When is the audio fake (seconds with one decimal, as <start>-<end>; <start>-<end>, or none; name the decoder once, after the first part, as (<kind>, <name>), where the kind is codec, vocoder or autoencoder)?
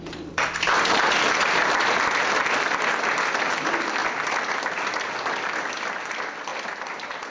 none